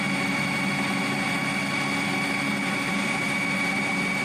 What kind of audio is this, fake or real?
real